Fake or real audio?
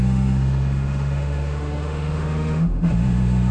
fake